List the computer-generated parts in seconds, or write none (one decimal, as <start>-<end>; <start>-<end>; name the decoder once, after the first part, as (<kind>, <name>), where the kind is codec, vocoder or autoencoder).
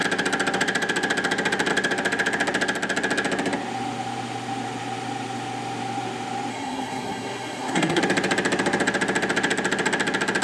6.5-8.0 (codec, SNAC)